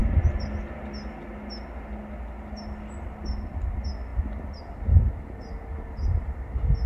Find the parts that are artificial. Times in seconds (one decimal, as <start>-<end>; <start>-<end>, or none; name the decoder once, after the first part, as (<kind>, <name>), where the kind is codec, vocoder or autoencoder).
none